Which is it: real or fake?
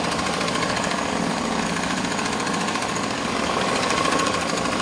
fake